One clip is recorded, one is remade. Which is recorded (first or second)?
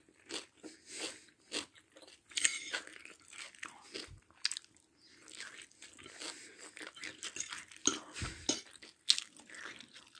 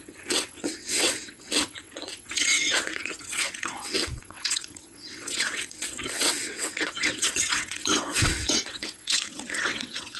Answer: first